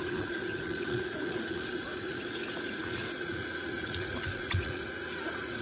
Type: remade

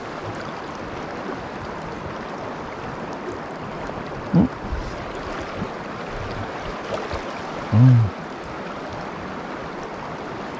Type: recorded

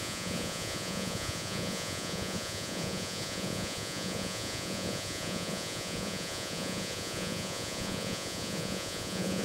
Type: remade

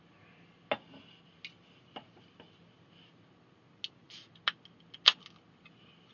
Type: recorded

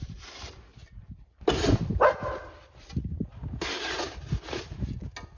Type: recorded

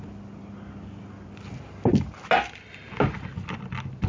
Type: recorded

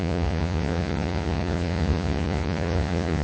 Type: remade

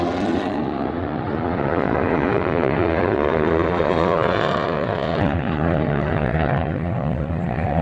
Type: remade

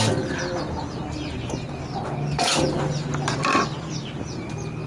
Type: recorded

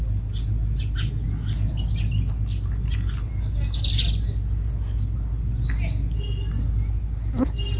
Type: recorded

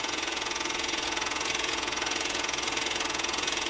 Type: remade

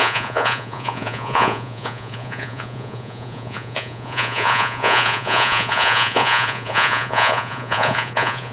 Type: remade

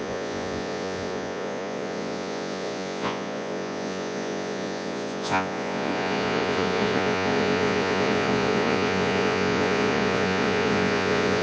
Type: remade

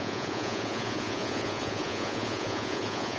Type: remade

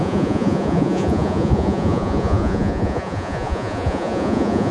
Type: remade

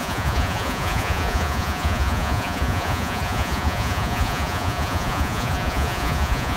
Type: remade